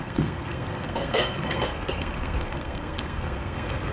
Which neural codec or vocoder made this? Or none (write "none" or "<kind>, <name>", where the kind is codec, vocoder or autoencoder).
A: codec, SNAC